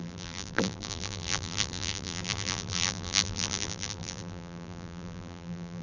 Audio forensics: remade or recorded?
remade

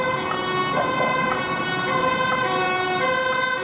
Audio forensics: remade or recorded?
remade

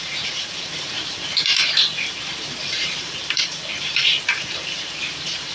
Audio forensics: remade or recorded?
remade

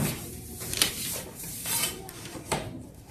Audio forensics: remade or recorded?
remade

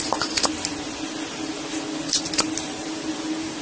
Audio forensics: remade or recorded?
recorded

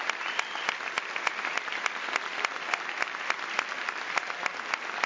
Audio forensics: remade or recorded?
recorded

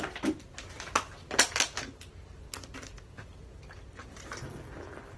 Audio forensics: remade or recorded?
recorded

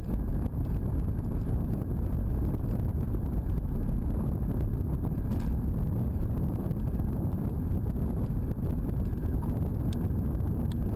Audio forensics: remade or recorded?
recorded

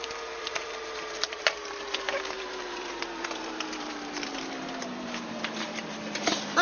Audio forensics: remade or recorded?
remade